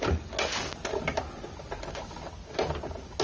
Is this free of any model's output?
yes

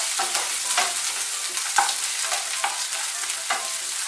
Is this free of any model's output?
yes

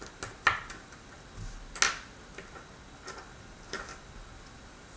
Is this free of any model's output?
yes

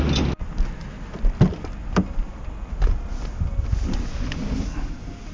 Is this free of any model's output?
yes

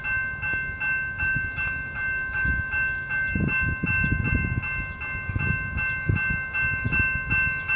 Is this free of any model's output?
yes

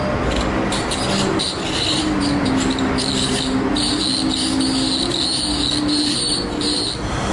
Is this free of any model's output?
yes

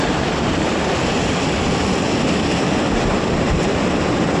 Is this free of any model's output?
no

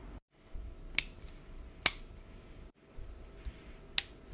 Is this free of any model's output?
yes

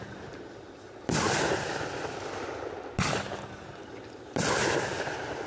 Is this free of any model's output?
yes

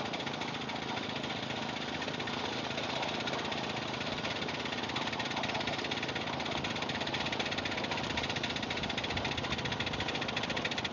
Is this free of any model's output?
yes